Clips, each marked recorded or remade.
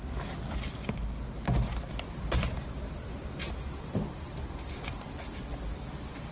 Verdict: recorded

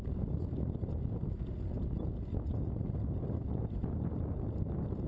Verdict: recorded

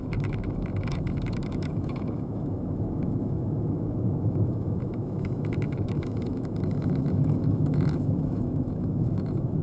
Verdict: remade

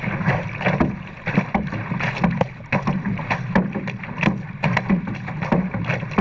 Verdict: recorded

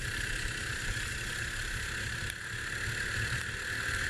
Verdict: recorded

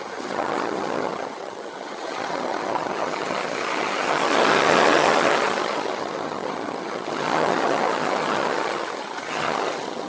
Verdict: remade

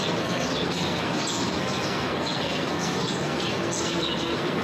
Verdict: remade